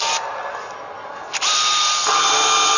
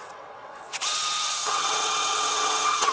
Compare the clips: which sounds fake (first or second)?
second